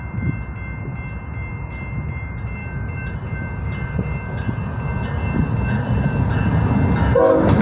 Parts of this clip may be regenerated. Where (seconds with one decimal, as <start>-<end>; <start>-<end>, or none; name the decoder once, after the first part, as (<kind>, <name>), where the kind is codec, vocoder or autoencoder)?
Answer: none